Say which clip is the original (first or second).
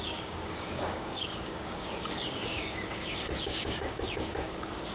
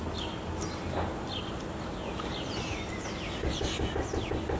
second